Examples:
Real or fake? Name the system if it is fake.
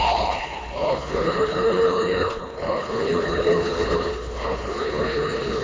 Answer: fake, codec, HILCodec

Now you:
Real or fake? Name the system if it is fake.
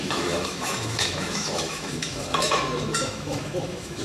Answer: fake, autoencoder, DAC-VAE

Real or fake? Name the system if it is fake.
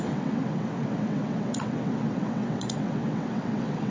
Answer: fake, vocoder, WaveNeXt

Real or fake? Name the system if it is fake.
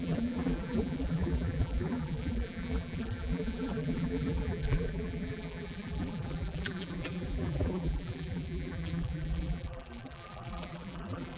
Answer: fake, vocoder, BigVGAN v2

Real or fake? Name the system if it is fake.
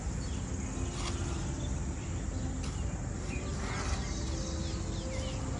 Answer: real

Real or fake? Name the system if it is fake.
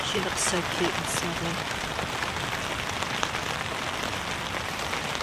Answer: fake, vocoder, BigVGAN v2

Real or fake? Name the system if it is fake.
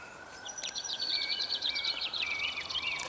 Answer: fake, vocoder, Vocos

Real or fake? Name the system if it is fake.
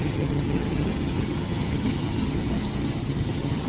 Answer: fake, vocoder, HiFi-GAN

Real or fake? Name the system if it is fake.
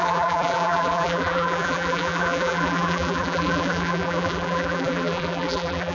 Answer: fake, vocoder, BigVGAN v2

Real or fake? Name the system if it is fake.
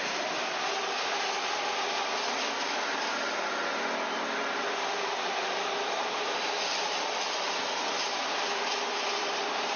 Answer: real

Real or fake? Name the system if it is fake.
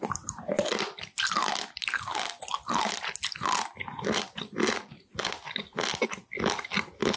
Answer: real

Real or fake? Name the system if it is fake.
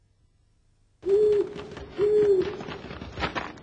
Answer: real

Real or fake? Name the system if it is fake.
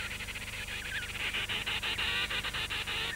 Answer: real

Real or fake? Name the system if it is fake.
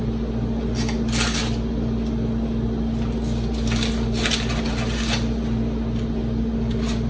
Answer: real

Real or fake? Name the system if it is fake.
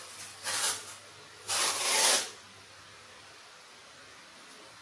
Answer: real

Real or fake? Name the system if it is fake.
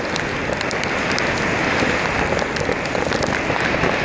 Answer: real